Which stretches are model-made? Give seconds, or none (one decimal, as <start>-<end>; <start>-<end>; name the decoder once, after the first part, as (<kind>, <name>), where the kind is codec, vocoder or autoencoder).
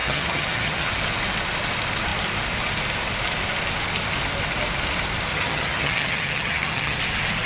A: 0.0-0.9 (vocoder, HiFi-GAN); 5.3-7.0